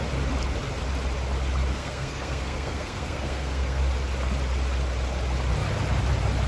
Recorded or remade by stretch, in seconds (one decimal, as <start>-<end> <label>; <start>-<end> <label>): 0.0-1.7 recorded; 1.7-3.8 remade; 3.8-6.5 recorded